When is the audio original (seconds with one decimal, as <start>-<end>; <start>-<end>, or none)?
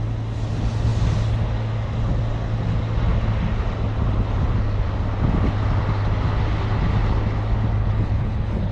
0.0-7.8